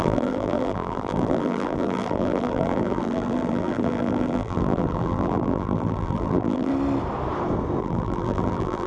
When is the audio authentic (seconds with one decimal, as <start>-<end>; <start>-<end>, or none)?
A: 6.7-7.8

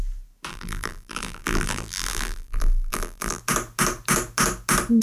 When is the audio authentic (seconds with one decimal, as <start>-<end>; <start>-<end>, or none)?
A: 0.0-0.5; 3.4-5.0

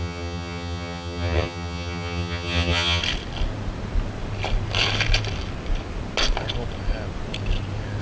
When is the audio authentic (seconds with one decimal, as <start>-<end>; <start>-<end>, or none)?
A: 3.0-8.0

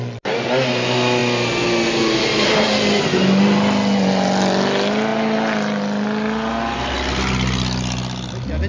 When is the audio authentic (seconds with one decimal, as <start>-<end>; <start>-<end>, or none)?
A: 0.0-8.7

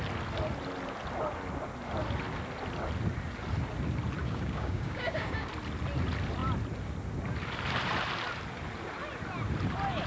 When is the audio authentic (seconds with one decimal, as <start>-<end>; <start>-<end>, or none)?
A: 0.0-4.2; 5.5-10.1

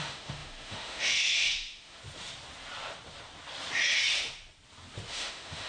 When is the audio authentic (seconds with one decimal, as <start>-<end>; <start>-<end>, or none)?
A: 2.0-5.1

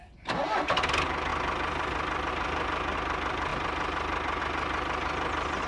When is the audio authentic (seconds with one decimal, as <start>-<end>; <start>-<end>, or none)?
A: 0.0-5.7

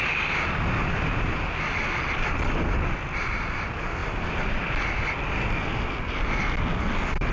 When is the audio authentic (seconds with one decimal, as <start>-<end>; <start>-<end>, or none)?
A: 0.0-7.3